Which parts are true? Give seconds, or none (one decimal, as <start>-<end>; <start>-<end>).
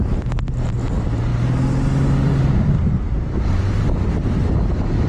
0.0-5.1